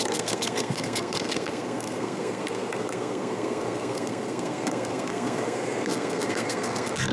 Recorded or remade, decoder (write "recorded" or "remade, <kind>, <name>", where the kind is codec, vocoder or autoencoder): remade, codec, SNAC